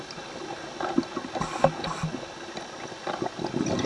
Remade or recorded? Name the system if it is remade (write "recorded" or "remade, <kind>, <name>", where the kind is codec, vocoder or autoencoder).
recorded